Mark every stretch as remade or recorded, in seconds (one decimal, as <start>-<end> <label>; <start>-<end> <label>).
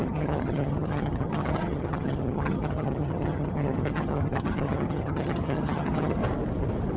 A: 0.0-6.2 remade; 6.2-7.0 recorded